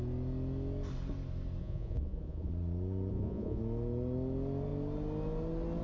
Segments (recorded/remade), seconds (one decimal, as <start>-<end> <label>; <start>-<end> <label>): 0.0-1.6 recorded; 1.6-2.5 remade; 2.5-3.1 recorded; 3.1-3.6 remade; 3.6-5.8 recorded